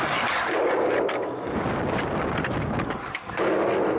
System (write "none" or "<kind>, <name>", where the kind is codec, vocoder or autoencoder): none